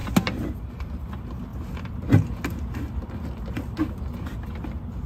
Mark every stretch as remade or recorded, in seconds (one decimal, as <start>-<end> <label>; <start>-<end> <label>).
0.0-1.5 recorded; 1.5-2.0 remade; 2.0-5.1 recorded